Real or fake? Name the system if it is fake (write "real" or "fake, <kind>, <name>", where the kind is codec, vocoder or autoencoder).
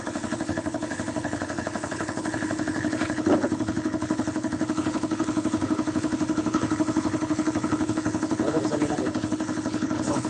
fake, codec, HILCodec